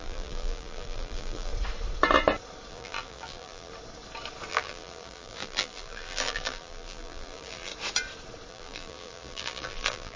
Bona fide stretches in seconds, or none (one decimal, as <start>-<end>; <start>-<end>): 1.5-2.7; 3.7-4.5; 7.7-8.5